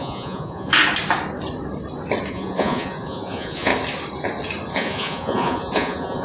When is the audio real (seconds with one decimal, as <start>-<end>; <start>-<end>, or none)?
0.7-2.3; 3.7-4.7